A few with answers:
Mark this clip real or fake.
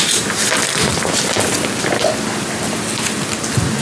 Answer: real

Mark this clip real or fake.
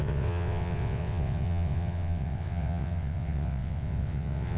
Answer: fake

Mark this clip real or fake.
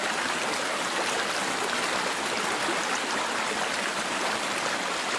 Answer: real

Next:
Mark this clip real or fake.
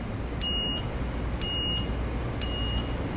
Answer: real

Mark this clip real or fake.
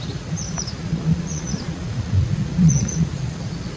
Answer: fake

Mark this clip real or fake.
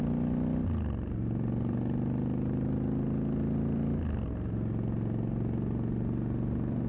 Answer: real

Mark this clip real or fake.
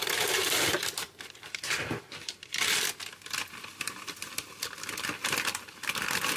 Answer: fake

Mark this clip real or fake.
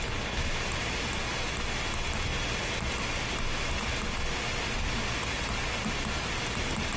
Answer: real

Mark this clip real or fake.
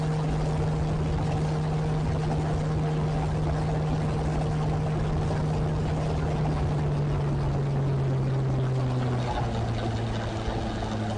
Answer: real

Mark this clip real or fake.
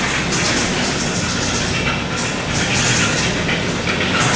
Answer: real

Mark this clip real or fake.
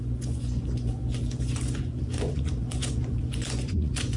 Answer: fake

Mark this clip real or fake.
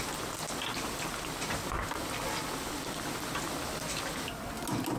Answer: real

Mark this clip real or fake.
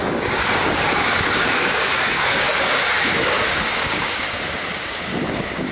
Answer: fake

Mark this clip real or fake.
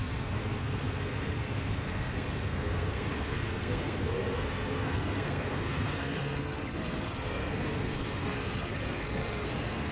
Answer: fake